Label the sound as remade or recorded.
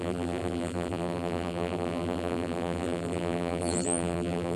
remade